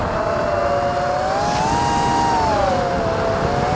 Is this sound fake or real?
real